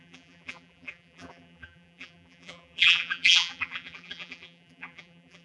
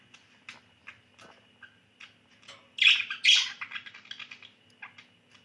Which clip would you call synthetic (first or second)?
first